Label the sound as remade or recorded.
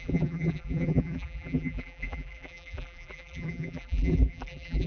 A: remade